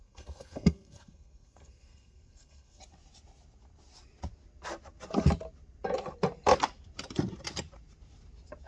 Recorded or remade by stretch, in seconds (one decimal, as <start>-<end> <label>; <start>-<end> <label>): 0.0-2.8 remade; 2.8-8.7 recorded